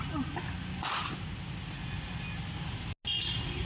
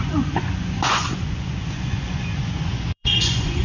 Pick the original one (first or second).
first